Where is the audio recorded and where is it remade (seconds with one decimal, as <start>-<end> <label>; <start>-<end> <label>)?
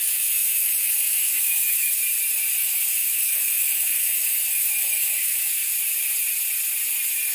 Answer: 0.0-2.0 remade; 2.0-2.6 recorded; 2.6-5.7 remade; 5.7-7.3 recorded